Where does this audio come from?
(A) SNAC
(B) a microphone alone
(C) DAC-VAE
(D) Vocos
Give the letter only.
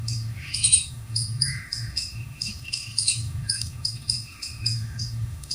C